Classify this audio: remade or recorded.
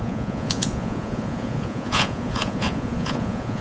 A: remade